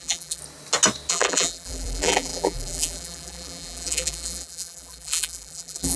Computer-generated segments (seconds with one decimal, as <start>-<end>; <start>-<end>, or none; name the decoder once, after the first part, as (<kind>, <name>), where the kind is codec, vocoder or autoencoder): 0.0-0.4 (vocoder, BigVGAN v2); 1.1-6.0